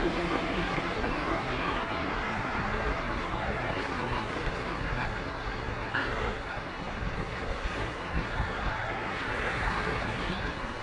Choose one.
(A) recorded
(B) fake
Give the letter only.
B